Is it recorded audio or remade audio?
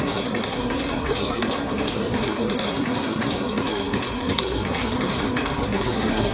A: remade